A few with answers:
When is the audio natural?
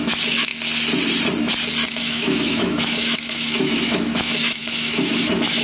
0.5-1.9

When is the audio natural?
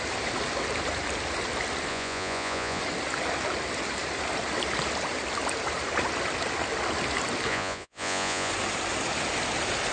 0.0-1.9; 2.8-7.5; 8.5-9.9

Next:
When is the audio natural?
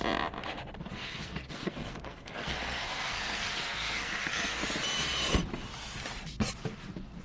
0.0-0.8; 4.6-7.2